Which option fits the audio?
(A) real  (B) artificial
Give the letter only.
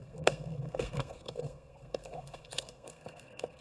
B